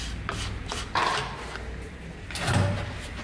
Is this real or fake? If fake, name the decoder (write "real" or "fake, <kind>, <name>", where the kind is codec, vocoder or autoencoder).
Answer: real